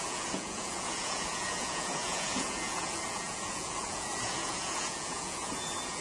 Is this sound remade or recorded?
remade